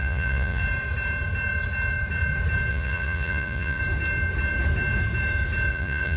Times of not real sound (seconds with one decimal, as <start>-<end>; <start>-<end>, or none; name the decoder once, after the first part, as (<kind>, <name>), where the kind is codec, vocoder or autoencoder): 0.0-0.6 (vocoder, Vocos); 2.7-3.8; 5.7-6.2